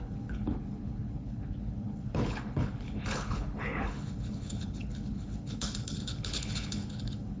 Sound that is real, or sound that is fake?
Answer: fake